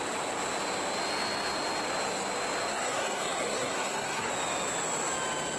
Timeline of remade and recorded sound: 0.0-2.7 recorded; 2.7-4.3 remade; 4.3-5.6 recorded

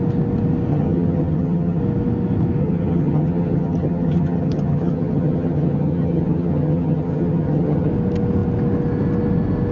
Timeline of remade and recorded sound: 0.0-0.7 recorded; 0.7-1.8 remade; 1.8-2.6 recorded; 2.6-7.9 remade; 7.9-9.7 recorded

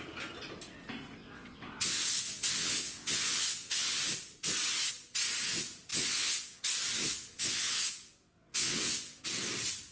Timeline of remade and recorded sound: 0.0-1.2 recorded; 1.2-4.0 remade; 4.0-5.9 recorded; 5.9-6.6 remade; 6.6-7.1 recorded; 7.1-9.2 remade; 9.2-9.9 recorded

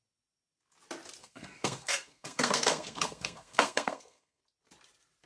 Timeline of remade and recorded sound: 0.0-1.2 recorded; 1.2-4.4 remade; 4.4-5.3 recorded

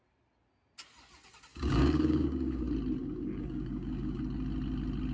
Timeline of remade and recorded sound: 0.0-1.5 recorded; 1.5-2.6 remade; 2.6-3.0 recorded; 3.0-4.2 remade; 4.2-5.1 recorded